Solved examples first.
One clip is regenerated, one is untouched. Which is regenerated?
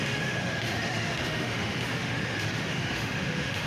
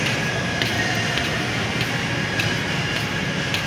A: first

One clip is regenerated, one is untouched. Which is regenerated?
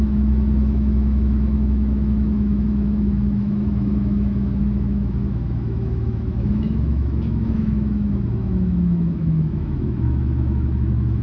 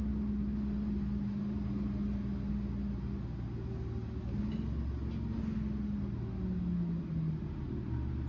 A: first